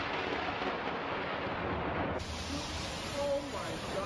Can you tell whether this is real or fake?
real